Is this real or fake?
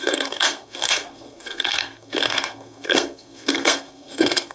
fake